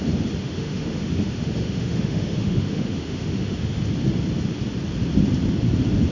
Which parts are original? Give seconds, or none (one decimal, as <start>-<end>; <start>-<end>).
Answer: 0.0-0.4; 3.8-6.1